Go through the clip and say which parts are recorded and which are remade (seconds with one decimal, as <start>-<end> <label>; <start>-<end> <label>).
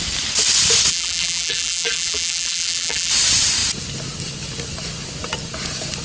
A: 0.0-0.9 recorded; 0.9-3.1 remade; 3.1-6.0 recorded